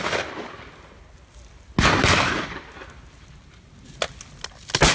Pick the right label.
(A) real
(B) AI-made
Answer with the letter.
A